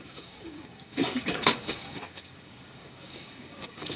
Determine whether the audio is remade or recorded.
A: remade